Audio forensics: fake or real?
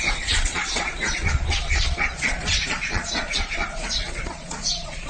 fake